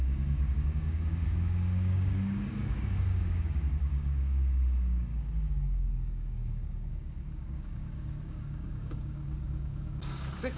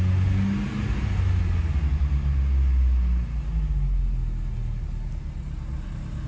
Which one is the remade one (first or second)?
first